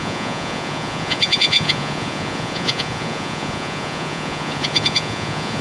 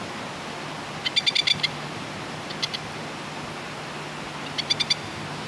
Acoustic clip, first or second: second